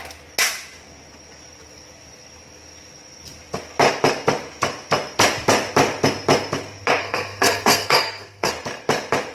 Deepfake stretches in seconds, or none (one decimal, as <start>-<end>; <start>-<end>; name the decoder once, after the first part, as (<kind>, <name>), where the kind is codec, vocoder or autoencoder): 7.0-8.5 (codec, SNAC)